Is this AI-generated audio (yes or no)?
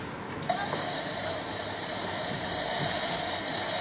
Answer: yes